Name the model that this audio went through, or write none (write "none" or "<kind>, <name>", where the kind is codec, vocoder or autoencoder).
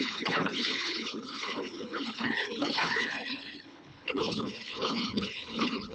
codec, HILCodec